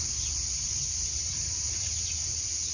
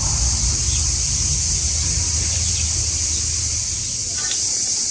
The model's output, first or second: first